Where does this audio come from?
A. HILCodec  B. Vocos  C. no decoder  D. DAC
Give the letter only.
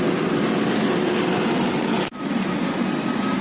C